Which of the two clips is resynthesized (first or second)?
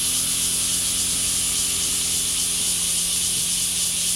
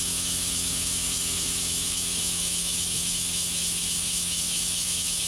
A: second